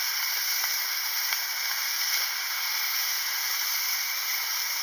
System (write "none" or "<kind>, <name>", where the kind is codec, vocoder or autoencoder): none